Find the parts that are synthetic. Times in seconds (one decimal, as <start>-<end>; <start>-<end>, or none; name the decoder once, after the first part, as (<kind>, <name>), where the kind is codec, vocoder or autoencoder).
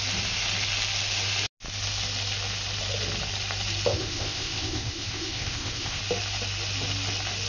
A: 3.9-6.0 (codec, ZipCodec)